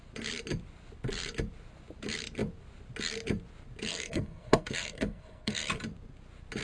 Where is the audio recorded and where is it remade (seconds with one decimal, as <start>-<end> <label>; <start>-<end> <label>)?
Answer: 0.0-3.9 recorded; 3.9-5.7 remade; 5.7-6.6 recorded